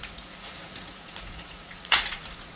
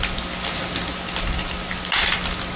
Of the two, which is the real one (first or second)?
second